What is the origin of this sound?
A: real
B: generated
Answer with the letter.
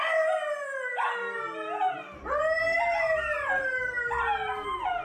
A